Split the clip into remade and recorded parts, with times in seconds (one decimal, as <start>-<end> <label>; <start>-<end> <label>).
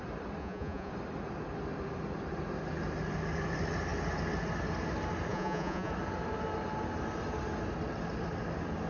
0.0-0.4 recorded; 0.4-0.9 remade; 0.9-5.3 recorded; 5.3-5.9 remade; 5.9-8.9 recorded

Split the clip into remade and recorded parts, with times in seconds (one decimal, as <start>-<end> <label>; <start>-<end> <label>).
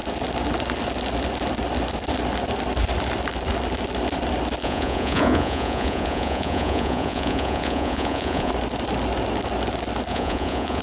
0.0-4.6 recorded; 4.6-8.5 remade; 8.5-10.1 recorded; 10.1-10.8 remade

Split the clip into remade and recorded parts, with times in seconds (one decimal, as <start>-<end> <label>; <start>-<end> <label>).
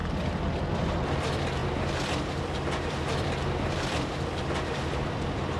0.0-0.7 recorded; 0.7-1.6 remade; 1.6-2.9 recorded; 2.9-5.6 remade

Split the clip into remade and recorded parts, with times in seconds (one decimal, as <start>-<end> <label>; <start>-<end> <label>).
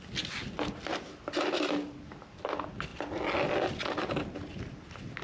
0.0-5.2 recorded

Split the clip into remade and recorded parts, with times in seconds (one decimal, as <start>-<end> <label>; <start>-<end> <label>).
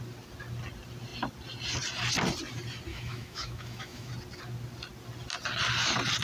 0.0-2.9 recorded; 2.9-4.1 remade; 4.1-6.2 recorded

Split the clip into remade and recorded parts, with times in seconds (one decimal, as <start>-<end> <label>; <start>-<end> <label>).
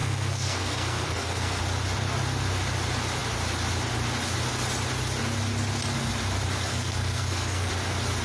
0.0-1.6 remade; 1.6-6.7 recorded; 6.7-7.7 remade; 7.7-8.2 recorded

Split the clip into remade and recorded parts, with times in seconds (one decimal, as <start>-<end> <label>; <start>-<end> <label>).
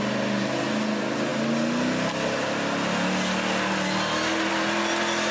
0.0-5.3 recorded